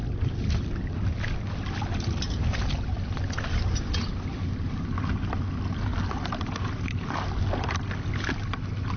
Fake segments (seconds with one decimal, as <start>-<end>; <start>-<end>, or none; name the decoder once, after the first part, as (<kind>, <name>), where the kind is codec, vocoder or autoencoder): none